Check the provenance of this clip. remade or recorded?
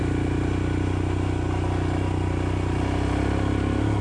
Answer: recorded